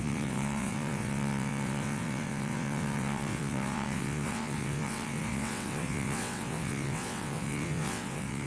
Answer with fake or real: fake